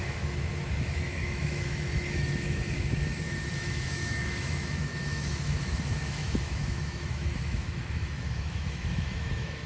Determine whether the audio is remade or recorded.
remade